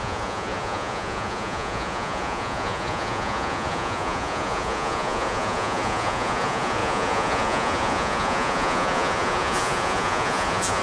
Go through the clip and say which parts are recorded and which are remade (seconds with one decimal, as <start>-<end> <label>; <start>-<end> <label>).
0.0-10.8 remade

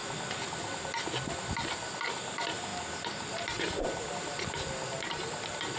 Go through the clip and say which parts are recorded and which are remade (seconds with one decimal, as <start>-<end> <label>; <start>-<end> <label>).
0.0-5.8 recorded

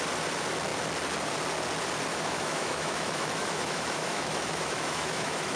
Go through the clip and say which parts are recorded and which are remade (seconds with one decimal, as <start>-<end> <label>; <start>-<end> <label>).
0.0-2.1 recorded; 2.1-5.6 remade

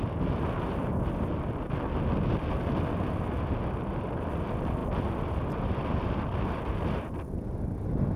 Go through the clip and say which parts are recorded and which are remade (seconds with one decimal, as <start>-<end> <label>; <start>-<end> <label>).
0.0-8.2 recorded

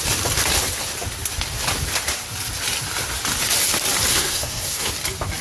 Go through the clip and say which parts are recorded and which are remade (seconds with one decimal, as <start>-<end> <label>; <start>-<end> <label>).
0.0-4.1 recorded; 4.1-4.9 remade; 4.9-5.4 recorded